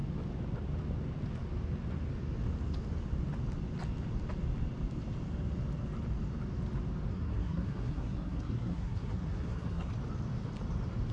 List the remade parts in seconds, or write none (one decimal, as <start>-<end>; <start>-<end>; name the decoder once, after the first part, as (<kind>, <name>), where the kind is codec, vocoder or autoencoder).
7.1-9.9 (codec, SNAC)